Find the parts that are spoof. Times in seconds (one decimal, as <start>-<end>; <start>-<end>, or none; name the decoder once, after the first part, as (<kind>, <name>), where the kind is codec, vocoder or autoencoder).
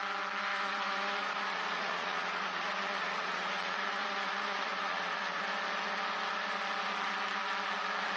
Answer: 0.5-5.4 (vocoder, Vocos)